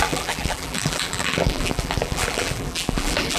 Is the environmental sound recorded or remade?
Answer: remade